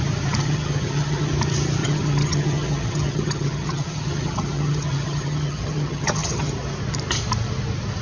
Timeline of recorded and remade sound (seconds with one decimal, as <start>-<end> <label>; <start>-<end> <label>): 0.0-0.4 recorded; 0.4-1.3 remade; 1.3-1.8 recorded; 1.8-6.5 remade; 6.5-8.0 recorded